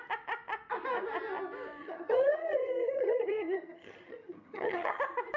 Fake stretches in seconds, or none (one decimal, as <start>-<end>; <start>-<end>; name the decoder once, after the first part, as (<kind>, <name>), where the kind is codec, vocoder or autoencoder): 1.8-5.0 (vocoder, HiFi-GAN)